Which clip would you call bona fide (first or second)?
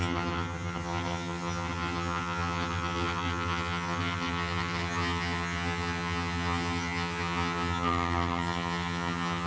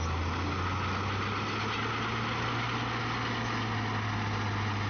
second